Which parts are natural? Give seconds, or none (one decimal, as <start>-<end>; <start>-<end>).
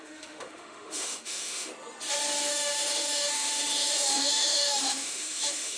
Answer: 1.7-2.5